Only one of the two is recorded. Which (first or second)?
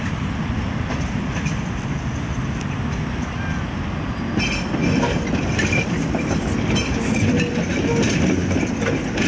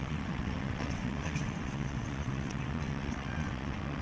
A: first